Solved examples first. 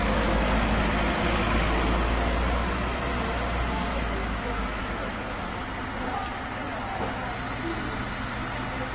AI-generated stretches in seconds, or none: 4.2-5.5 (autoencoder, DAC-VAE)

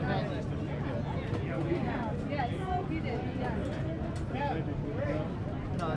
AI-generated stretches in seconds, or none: none

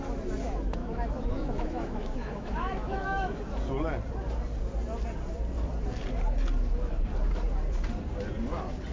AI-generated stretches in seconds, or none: 0.8-3.4 (autoencoder, DAC-VAE)

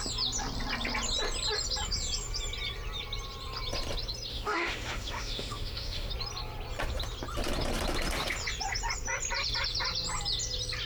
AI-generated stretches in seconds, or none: 4.3-6.1 (autoencoder, DAC-VAE)